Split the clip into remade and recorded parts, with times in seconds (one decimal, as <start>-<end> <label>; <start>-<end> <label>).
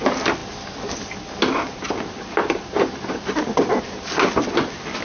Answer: 0.0-5.0 recorded